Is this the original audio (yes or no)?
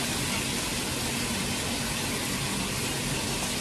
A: yes